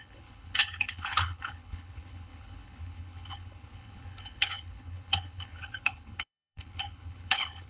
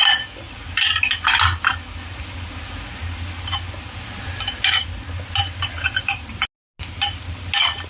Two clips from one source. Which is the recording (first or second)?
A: second